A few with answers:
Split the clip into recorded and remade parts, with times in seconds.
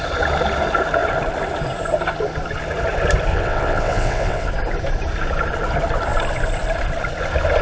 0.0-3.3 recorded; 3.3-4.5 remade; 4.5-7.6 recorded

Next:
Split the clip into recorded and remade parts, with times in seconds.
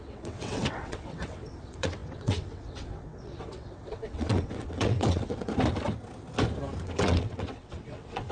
0.0-5.5 remade; 5.5-6.8 recorded; 6.8-8.3 remade